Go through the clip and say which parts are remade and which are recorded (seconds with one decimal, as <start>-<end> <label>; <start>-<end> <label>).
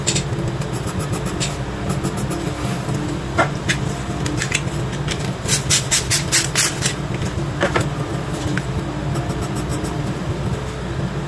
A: 0.0-9.7 recorded; 9.7-10.6 remade; 10.6-11.3 recorded